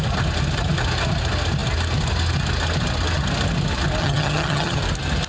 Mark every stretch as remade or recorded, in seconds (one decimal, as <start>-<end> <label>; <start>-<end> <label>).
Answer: 0.0-4.0 recorded; 4.0-4.8 remade; 4.8-5.3 recorded